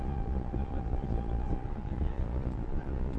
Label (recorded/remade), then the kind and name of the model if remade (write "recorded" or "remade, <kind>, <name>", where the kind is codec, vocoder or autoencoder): remade, vocoder, Vocos